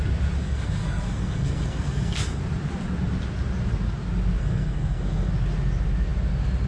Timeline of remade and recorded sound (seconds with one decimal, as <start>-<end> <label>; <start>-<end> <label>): 0.0-0.4 recorded; 0.4-2.4 remade; 2.4-4.4 recorded; 4.4-5.3 remade; 5.3-6.7 recorded